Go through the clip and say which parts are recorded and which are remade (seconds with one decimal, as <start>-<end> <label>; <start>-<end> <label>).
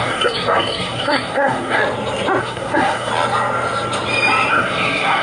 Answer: 0.0-1.8 remade; 1.8-2.4 recorded; 2.4-3.1 remade; 3.1-4.5 recorded; 4.5-5.2 remade